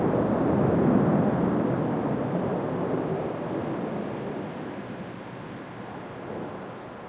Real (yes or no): yes